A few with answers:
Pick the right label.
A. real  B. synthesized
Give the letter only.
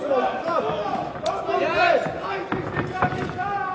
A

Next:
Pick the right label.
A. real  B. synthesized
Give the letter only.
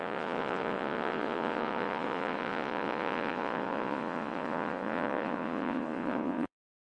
B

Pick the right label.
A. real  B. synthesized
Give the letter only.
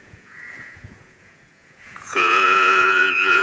B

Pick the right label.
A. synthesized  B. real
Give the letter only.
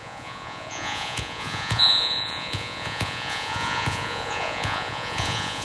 A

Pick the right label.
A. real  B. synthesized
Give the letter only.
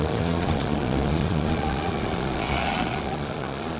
B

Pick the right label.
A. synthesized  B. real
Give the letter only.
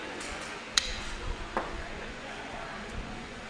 A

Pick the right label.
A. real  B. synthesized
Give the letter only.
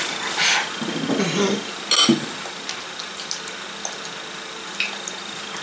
A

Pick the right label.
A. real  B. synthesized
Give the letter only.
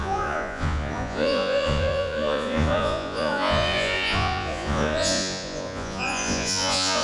B